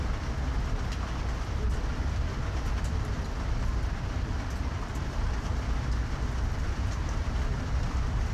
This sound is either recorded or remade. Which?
recorded